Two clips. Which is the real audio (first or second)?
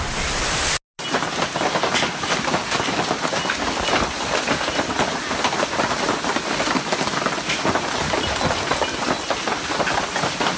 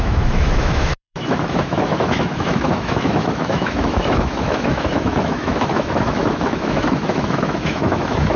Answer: first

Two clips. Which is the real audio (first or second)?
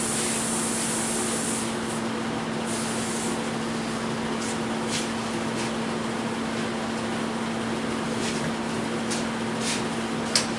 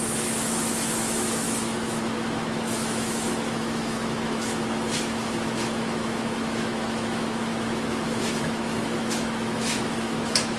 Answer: first